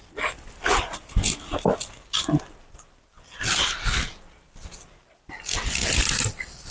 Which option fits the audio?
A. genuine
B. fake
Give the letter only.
A